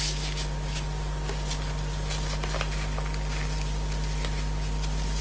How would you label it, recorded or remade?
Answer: recorded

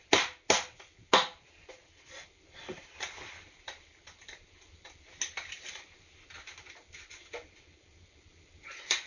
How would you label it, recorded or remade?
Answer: recorded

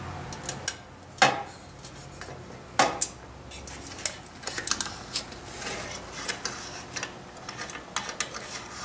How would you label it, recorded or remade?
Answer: recorded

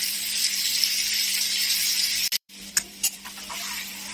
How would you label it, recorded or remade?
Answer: remade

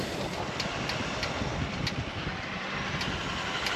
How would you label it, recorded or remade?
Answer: recorded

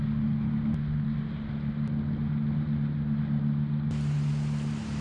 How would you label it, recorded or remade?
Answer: recorded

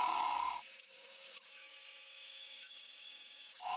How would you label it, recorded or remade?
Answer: remade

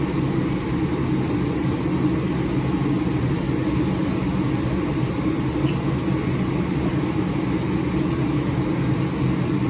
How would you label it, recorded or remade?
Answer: recorded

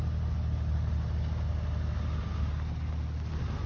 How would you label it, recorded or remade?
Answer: recorded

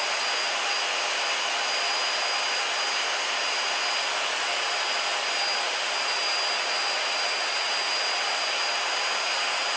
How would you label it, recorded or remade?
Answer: recorded